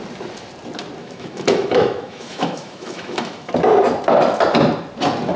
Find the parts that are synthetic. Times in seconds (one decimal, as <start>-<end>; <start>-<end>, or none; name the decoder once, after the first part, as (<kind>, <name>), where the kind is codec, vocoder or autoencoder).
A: 1.0-3.5 (autoencoder, DAC-VAE)